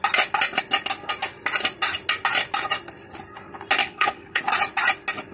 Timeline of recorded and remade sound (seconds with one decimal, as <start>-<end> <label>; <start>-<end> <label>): 0.0-3.8 recorded; 3.8-4.4 remade; 4.4-5.3 recorded